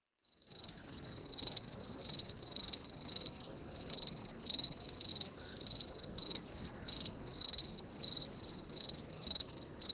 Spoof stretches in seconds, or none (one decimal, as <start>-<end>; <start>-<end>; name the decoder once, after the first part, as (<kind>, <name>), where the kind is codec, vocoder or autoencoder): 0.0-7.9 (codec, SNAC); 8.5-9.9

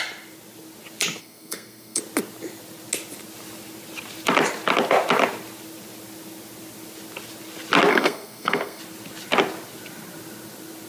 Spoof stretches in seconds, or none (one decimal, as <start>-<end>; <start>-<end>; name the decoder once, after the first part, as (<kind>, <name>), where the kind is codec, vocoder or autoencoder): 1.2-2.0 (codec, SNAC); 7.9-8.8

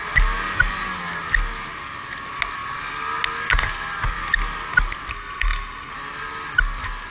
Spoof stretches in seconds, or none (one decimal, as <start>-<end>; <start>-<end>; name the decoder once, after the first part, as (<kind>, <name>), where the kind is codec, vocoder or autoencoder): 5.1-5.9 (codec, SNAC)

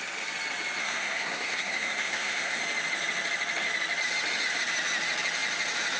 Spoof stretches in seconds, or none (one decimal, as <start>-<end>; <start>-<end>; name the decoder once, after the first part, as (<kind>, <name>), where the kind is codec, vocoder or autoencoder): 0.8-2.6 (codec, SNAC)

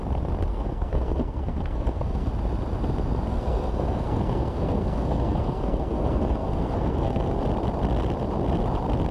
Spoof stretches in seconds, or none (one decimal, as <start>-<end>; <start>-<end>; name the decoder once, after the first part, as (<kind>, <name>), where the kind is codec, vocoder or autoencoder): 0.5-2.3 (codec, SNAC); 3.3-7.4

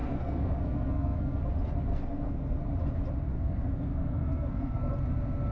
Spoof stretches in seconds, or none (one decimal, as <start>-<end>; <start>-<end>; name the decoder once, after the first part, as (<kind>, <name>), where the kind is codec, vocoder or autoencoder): 0.0-1.4 (codec, SNAC); 1.9-2.6; 3.3-4.9

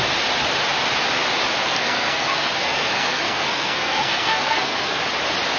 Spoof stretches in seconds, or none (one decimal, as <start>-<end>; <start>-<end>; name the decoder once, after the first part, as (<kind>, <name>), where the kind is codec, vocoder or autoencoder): 1.6-5.0 (codec, SNAC)

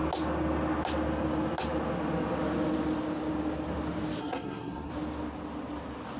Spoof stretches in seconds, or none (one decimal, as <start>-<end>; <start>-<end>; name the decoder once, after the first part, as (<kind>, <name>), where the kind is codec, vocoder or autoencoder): 4.2-4.9 (codec, SNAC)